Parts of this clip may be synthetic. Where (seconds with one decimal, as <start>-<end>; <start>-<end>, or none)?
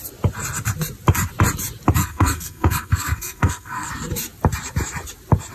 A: 2.0-3.9